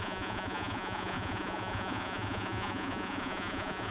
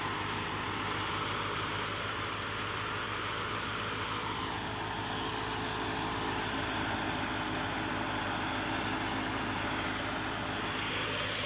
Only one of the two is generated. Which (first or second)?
first